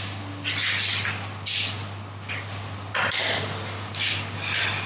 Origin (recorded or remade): recorded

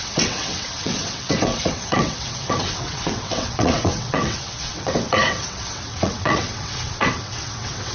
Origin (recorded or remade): remade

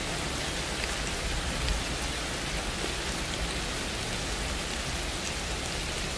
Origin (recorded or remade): recorded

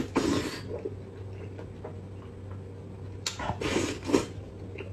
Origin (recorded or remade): recorded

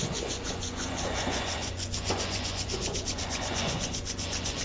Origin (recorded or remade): remade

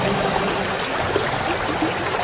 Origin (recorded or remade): recorded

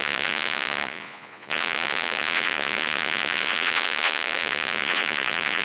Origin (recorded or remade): remade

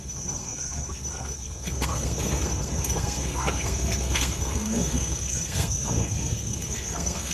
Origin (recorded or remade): remade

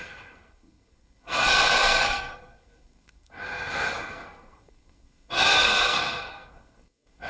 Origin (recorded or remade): remade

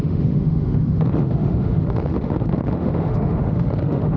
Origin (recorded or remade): remade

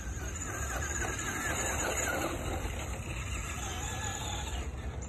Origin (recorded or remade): recorded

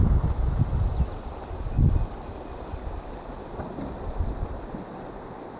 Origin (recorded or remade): recorded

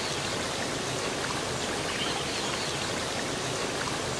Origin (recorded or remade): recorded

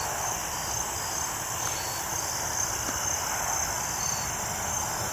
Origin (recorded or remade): recorded